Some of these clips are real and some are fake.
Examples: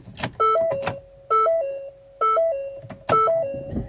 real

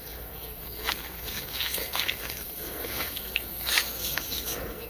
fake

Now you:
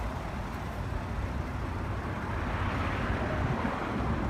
real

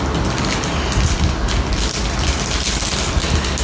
real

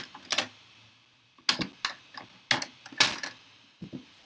real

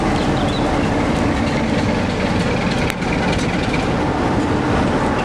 real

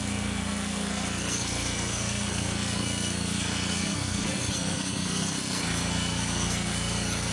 fake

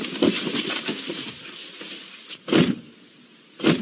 real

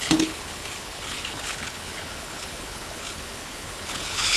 fake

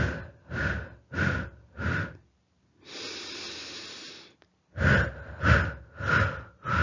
real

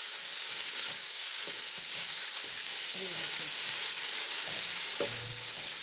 fake